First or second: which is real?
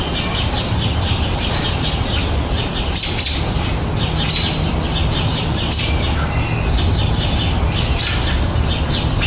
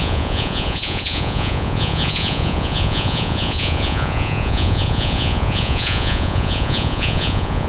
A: first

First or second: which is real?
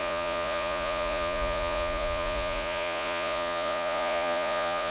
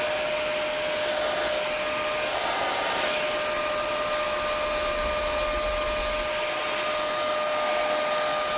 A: second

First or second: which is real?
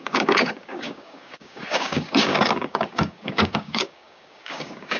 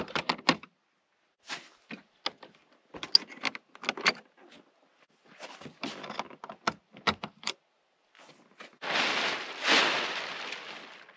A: second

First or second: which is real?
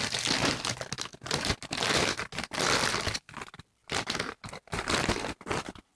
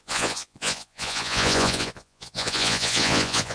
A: first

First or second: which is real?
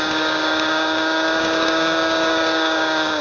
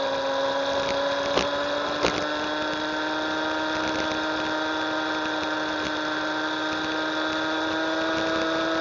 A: second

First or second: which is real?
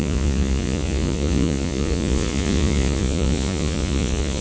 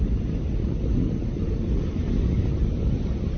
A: second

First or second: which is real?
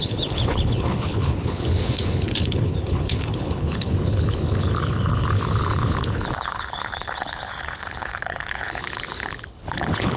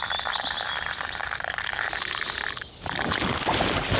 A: second